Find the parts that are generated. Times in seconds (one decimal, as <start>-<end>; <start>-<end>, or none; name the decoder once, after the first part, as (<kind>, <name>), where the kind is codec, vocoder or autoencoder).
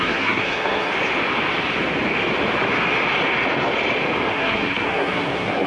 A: 0.0-0.9 (codec, SNAC); 4.3-5.7